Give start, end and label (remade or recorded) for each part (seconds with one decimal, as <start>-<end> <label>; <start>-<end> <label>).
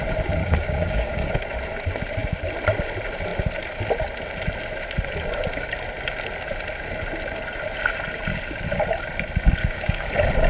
0.0-0.4 recorded; 0.4-1.3 remade; 1.3-9.6 recorded; 9.6-10.1 remade; 10.1-10.5 recorded